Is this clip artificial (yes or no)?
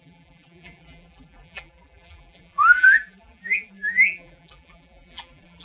yes